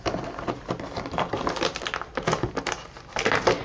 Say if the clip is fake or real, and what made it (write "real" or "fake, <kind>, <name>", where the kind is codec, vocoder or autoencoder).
real